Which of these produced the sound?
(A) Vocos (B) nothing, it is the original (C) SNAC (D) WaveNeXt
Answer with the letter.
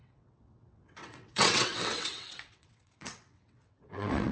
D